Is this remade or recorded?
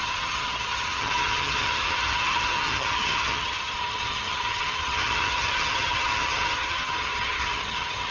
remade